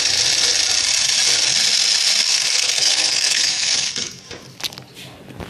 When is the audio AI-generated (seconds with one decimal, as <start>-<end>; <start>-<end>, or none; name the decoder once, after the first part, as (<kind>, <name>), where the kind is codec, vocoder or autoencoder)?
2.3-4.2 (codec, SNAC)